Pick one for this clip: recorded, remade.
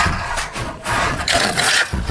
remade